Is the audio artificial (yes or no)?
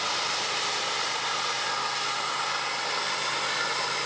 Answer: no